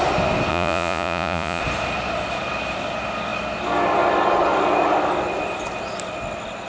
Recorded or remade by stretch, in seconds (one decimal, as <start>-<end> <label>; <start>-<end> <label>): 0.0-0.5 recorded; 0.5-1.6 remade; 1.6-6.7 recorded